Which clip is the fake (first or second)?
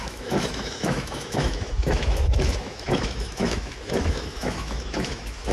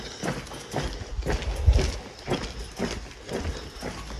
first